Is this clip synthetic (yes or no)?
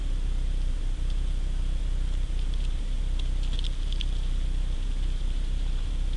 no